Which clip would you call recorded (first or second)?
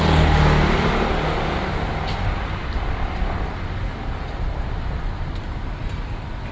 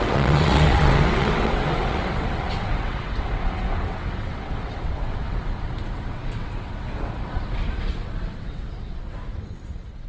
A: first